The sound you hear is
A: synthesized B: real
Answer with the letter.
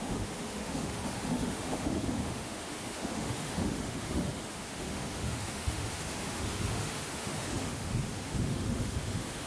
A